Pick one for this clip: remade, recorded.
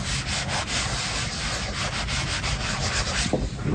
recorded